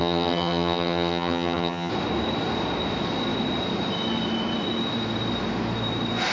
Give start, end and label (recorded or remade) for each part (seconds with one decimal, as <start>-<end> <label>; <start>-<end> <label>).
0.0-1.9 remade; 1.9-6.3 recorded